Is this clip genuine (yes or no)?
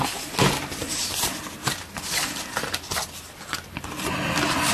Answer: yes